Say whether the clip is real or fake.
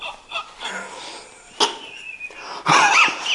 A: real